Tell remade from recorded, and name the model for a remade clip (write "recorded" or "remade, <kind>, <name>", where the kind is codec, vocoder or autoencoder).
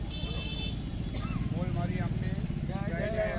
recorded